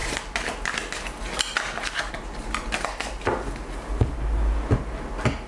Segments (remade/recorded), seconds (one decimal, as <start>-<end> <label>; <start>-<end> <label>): 0.0-5.5 recorded